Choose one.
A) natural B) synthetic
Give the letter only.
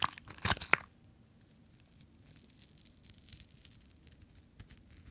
A